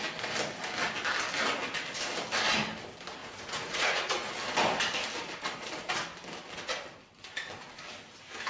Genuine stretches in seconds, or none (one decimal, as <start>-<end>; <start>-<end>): 0.0-3.2; 4.3-8.5